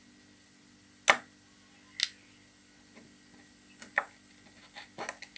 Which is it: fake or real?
real